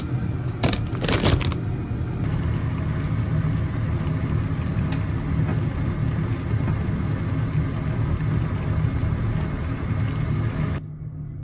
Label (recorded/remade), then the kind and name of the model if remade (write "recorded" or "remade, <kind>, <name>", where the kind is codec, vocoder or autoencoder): recorded